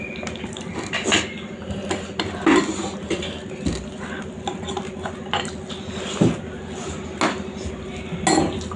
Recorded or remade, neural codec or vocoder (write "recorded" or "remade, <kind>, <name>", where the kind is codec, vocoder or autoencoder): recorded